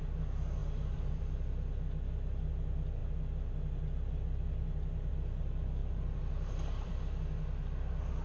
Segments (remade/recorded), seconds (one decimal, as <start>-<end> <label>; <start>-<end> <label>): 0.0-0.6 recorded; 0.6-1.2 remade; 1.2-5.8 recorded; 5.8-7.0 remade; 7.0-8.2 recorded